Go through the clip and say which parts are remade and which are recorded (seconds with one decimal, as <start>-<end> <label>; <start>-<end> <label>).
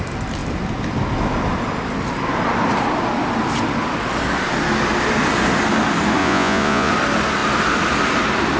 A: 0.0-6.2 recorded; 6.2-6.9 remade; 6.9-8.6 recorded